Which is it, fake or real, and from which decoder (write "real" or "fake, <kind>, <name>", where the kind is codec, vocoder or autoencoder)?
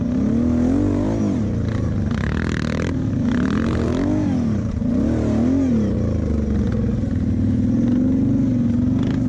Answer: real